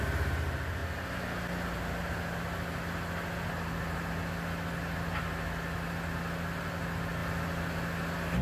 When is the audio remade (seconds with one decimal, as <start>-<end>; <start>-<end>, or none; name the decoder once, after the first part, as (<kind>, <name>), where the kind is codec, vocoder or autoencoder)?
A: none